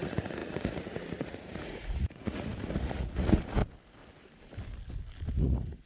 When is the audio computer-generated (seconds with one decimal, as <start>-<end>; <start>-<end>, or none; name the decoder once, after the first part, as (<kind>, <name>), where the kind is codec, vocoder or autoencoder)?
0.0-3.6 (vocoder, Vocos); 5.3-5.9